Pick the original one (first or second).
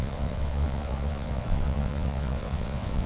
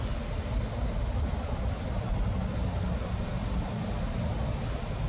second